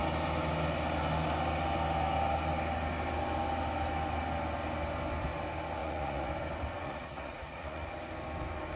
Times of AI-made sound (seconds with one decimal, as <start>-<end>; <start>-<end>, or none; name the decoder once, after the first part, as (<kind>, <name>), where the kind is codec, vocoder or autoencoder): 5.8-6.3 (vocoder, Vocos); 6.8-7.9